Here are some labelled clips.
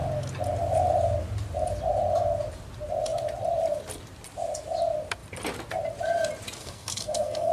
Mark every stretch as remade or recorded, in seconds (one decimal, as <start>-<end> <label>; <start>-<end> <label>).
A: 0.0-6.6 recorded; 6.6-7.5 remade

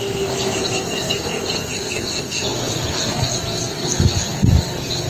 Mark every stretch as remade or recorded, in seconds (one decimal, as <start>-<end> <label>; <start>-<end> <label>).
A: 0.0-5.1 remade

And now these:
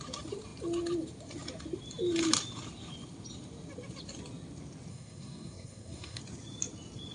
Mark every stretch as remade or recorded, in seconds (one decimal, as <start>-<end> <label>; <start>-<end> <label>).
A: 0.0-4.9 recorded; 4.9-6.2 remade; 6.2-7.1 recorded

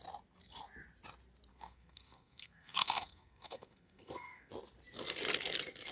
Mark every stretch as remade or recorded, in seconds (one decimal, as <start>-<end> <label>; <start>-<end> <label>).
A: 0.0-1.5 recorded; 1.5-4.5 remade; 4.5-5.9 recorded